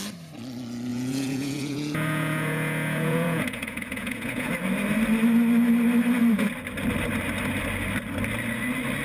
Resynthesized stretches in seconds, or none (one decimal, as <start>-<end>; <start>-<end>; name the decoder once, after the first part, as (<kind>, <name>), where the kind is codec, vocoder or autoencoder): 0.9-4.5 (vocoder, Vocos)